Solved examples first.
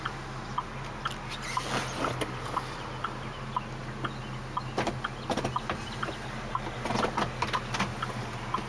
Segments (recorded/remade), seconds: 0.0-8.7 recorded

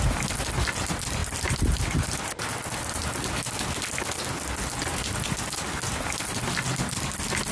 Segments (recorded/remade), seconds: 0.0-7.5 recorded

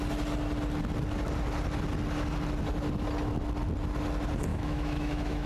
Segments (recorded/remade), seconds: 0.0-4.5 recorded; 4.5-5.5 remade

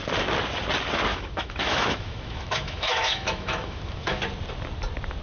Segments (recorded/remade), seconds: 0.0-1.1 recorded; 1.1-4.2 remade; 4.2-5.2 recorded

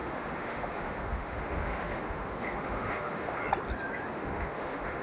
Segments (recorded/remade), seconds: 0.0-3.4 remade; 3.4-4.1 recorded; 4.1-5.0 remade

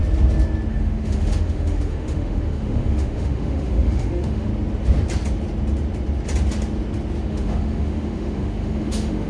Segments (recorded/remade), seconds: 0.0-0.7 recorded; 0.7-4.5 remade; 4.5-7.3 recorded; 7.3-9.3 remade

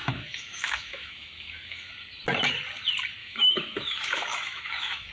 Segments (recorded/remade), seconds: 0.0-1.9 remade; 1.9-3.2 recorded; 3.2-5.1 remade